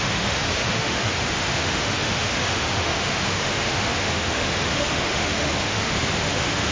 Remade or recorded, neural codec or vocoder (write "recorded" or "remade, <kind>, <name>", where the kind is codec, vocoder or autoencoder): remade, autoencoder, DAC-VAE